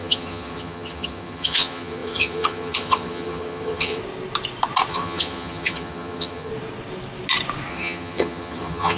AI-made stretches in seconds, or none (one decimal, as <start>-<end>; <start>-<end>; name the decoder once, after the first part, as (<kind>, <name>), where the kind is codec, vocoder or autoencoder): 0.0-4.0 (vocoder, HiFi-GAN); 4.9-6.5; 7.7-9.0